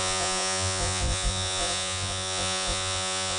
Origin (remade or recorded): remade